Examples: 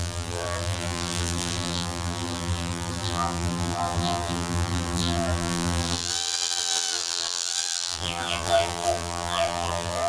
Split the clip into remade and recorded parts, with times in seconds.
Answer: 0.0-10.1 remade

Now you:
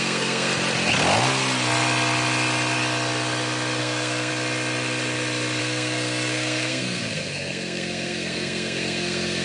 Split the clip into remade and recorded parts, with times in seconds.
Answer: 0.0-0.5 remade; 0.5-3.8 recorded; 3.8-4.3 remade; 4.3-5.6 recorded; 5.6-9.4 remade